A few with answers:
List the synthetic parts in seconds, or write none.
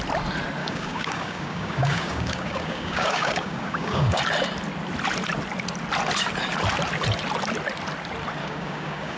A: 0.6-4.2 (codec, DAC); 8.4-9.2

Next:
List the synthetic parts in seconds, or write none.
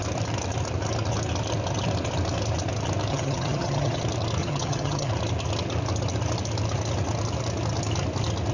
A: 3.1-4.0 (vocoder, HiFi-GAN); 4.4-5.1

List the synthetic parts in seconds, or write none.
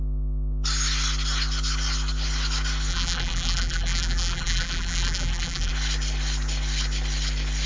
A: 2.9-5.7 (vocoder, BigVGAN v2)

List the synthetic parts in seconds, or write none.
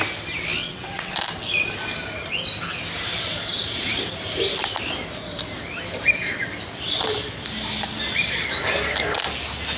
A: 0.6-1.1 (vocoder, WaveNeXt)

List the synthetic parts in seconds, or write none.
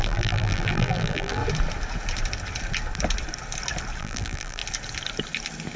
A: 0.0-1.4 (vocoder, BigVGAN v2); 4.0-4.6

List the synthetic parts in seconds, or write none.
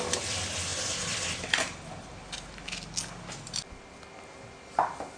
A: none